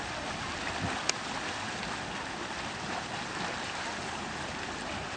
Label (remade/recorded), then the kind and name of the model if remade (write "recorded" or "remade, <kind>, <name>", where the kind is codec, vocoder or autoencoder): recorded